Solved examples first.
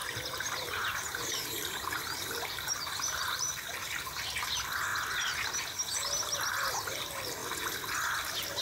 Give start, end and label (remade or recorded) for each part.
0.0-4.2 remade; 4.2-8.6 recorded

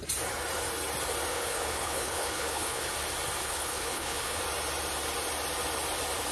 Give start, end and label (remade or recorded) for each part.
0.0-1.3 recorded; 1.3-2.9 remade; 2.9-3.4 recorded; 3.4-4.4 remade; 4.4-6.3 recorded

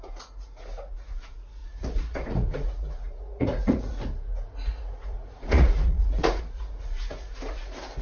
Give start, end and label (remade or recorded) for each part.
0.0-8.0 remade

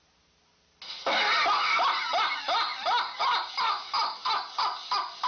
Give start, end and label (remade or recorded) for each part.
0.0-5.3 recorded